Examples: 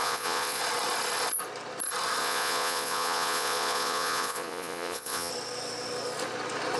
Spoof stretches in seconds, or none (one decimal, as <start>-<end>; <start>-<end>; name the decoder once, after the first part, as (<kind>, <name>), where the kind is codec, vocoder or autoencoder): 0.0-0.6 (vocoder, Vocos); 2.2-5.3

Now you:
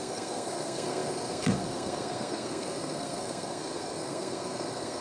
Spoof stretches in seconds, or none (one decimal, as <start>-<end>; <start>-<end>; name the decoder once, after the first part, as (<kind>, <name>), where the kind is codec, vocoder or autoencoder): 0.0-5.0 (codec, SNAC)

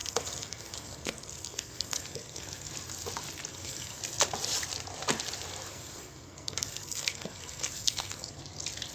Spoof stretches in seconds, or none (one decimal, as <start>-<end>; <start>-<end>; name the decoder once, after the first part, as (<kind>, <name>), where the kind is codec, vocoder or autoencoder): 0.0-2.7 (codec, SNAC); 3.5-4.0; 5.7-8.4

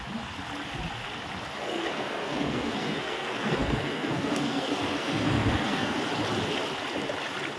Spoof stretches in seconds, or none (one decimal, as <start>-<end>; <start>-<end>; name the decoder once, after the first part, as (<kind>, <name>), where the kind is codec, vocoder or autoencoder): 1.6-6.0 (codec, SNAC)

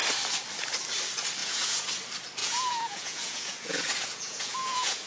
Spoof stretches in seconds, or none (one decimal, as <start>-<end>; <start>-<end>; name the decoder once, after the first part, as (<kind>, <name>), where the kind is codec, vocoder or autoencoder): 1.4-1.9 (vocoder, Vocos); 2.4-5.1